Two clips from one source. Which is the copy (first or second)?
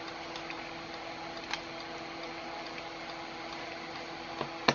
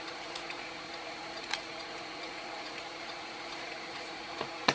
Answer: second